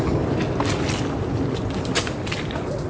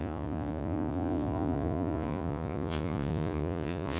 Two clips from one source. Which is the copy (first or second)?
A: second